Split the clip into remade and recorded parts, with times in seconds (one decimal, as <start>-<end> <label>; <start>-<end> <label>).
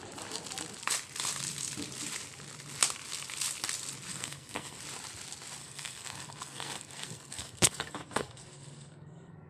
0.0-4.1 recorded; 4.1-4.8 remade; 4.8-5.6 recorded; 5.6-9.5 remade